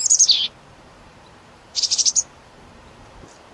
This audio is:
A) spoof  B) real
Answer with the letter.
A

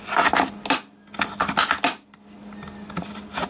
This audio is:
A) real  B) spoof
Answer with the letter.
A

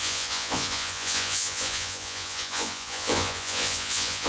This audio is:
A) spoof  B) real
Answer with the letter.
A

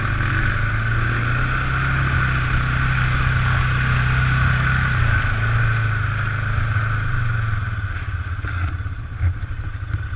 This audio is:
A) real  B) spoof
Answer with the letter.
A